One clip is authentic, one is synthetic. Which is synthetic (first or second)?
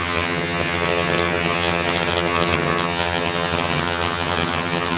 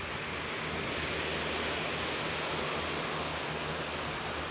first